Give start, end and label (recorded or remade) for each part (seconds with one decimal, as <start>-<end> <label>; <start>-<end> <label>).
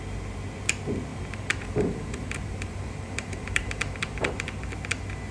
0.0-1.1 recorded; 1.1-4.3 remade; 4.3-5.3 recorded